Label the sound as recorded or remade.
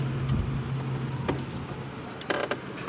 recorded